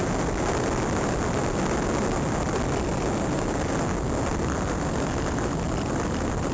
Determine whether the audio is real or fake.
real